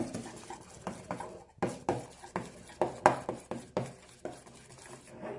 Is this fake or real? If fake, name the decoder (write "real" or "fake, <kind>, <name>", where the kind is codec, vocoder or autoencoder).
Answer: real